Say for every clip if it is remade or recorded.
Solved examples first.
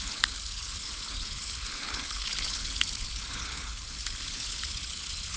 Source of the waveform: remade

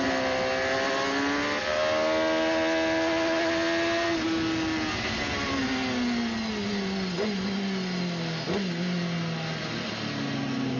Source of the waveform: recorded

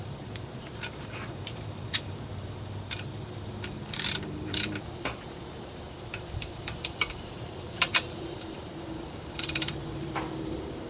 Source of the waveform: remade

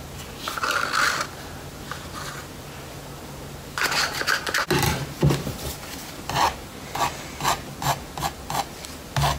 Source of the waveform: recorded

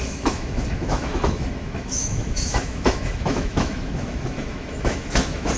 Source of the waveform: remade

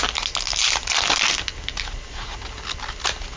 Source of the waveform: recorded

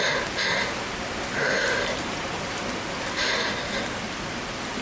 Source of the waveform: recorded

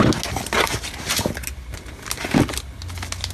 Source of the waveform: recorded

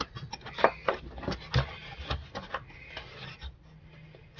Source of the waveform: recorded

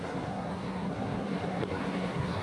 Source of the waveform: remade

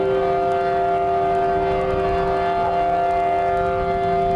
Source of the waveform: recorded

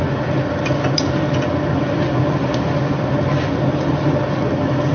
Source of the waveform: recorded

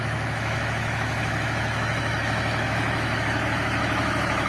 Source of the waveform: remade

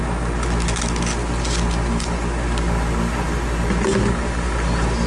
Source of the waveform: recorded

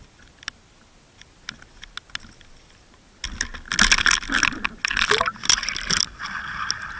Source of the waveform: recorded